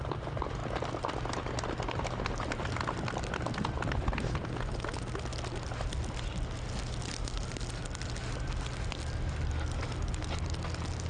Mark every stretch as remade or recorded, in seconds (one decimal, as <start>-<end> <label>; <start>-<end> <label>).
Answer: 0.0-11.1 recorded

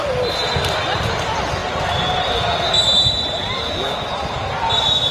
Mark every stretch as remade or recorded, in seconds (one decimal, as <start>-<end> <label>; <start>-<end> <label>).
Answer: 0.0-5.1 recorded

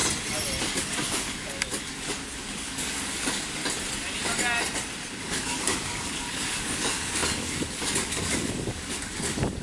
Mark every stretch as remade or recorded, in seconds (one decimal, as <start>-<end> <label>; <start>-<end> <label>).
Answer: 0.0-0.6 recorded; 0.6-3.6 remade; 3.6-5.1 recorded; 5.1-9.6 remade

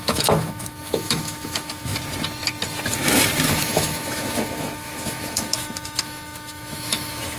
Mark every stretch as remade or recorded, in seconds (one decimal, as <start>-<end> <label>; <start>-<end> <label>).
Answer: 0.0-1.9 remade; 1.9-3.6 recorded; 3.6-7.4 remade